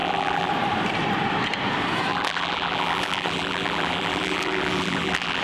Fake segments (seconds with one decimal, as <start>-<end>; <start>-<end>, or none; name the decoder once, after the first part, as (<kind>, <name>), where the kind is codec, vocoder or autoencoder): 0.0-0.5 (vocoder, BigVGAN v2); 2.1-5.4